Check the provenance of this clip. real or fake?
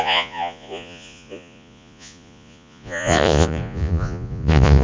fake